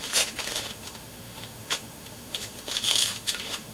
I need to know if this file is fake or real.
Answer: fake